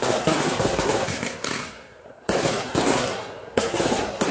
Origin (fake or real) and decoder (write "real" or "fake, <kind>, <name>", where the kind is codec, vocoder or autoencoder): fake, codec, SNAC